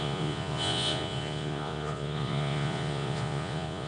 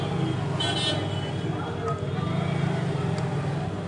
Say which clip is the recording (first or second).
second